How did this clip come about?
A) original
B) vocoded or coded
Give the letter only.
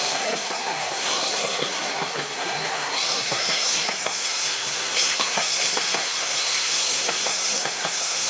B